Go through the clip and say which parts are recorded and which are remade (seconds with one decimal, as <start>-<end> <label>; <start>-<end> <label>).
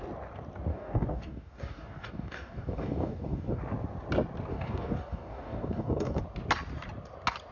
0.0-0.7 recorded; 0.7-3.6 remade; 3.6-4.5 recorded; 4.5-6.2 remade; 6.2-7.5 recorded